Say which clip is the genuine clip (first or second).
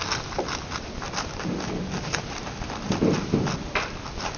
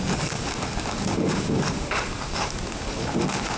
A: first